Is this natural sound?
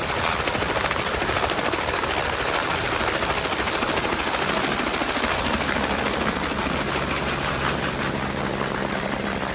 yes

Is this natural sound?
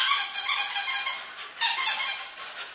yes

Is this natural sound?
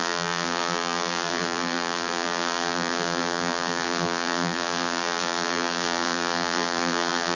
no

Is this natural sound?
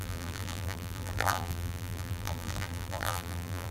no